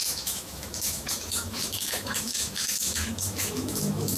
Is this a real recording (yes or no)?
no